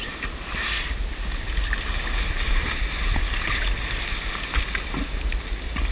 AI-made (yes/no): no